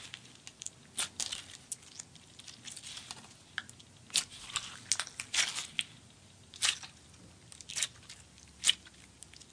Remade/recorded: recorded